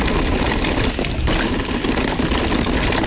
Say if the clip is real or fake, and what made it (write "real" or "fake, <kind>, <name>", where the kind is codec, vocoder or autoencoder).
real